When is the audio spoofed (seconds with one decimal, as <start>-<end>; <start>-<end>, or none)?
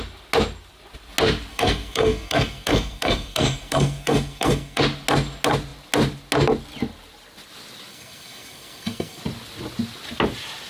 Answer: 1.5-4.8; 7.9-9.2